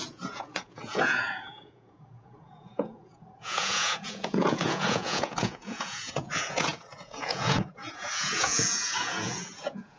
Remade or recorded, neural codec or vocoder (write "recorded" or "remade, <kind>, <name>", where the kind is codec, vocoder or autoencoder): remade, vocoder, Vocos